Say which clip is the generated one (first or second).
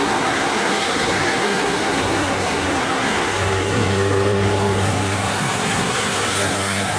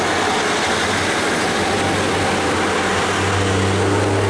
first